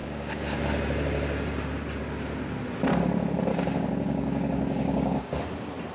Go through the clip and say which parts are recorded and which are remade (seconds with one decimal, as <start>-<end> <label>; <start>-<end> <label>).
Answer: 0.0-0.6 remade; 0.6-3.5 recorded; 3.5-5.3 remade; 5.3-5.9 recorded